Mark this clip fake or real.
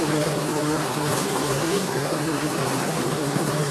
fake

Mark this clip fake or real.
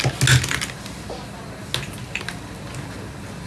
real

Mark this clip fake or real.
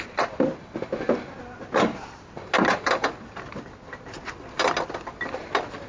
real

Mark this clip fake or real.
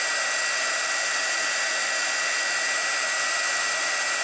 real